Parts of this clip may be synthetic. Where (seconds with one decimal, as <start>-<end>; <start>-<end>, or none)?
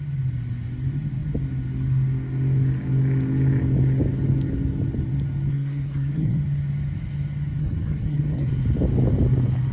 5.5-6.4; 7.6-8.5